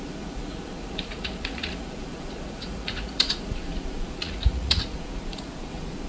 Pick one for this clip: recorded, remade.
remade